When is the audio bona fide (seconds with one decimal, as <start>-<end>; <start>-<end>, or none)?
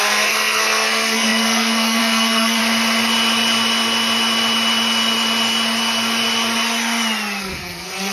2.6-7.4